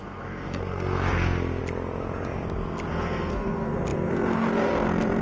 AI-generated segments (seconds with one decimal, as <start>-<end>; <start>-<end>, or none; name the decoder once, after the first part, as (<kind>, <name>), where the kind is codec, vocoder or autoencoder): 0.0-1.6 (codec, SNAC); 2.9-5.2